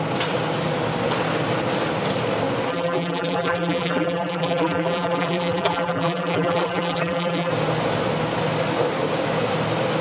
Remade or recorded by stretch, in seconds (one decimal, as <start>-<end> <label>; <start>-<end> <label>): 0.0-2.7 recorded; 2.7-7.5 remade; 7.5-10.0 recorded